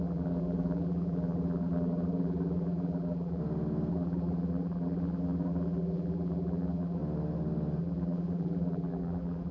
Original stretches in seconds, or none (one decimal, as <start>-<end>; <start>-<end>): 3.4-3.9; 7.0-7.8